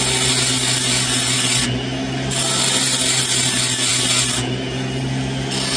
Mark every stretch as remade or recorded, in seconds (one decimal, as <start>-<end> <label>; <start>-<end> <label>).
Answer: 0.0-5.8 recorded

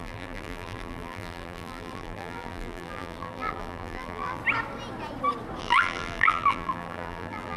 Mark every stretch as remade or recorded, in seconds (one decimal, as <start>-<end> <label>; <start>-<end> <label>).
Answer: 0.0-4.4 remade; 4.4-5.6 recorded; 5.6-7.6 remade

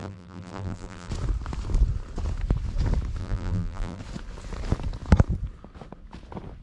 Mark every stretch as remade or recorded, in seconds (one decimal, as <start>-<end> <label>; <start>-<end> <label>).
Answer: 0.0-1.1 remade; 1.1-3.2 recorded; 3.2-4.0 remade; 4.0-6.6 recorded

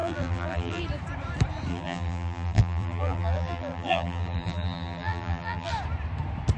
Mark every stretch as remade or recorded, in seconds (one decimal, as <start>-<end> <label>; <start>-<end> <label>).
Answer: 0.0-0.8 remade; 0.8-1.7 recorded; 1.7-5.7 remade; 5.7-6.6 recorded